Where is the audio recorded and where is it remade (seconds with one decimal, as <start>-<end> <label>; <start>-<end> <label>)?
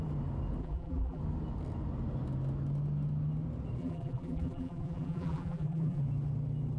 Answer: 0.0-0.6 recorded; 0.6-1.2 remade; 1.2-3.8 recorded; 3.8-6.0 remade; 6.0-6.8 recorded